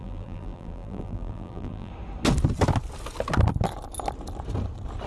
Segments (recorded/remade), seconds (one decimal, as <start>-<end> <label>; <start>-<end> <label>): 0.0-1.9 remade; 1.9-5.1 recorded